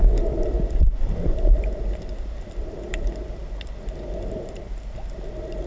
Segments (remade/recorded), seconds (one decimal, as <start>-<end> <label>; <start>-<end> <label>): 0.0-5.7 recorded